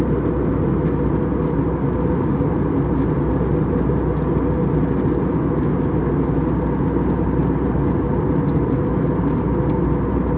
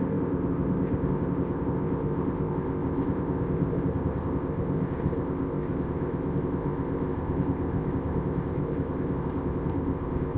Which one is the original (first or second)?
first